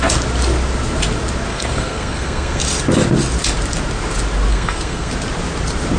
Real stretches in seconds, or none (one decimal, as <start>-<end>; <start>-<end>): 0.0-1.5; 2.6-4.5; 5.1-6.0